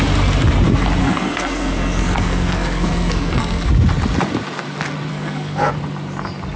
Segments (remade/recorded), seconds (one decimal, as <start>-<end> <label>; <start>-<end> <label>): 0.0-1.0 recorded; 1.0-3.7 remade; 3.7-5.1 recorded; 5.1-5.7 remade; 5.7-6.6 recorded